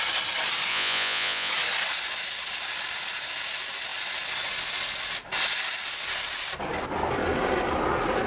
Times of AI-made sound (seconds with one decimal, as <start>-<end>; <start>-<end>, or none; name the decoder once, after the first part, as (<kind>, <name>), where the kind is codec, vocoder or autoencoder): 0.7-1.5 (vocoder, Vocos)